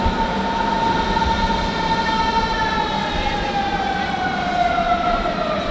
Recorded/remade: recorded